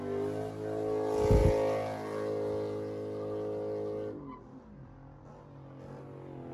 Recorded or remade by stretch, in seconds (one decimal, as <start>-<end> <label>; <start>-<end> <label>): 0.0-6.5 recorded